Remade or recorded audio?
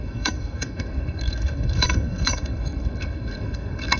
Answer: remade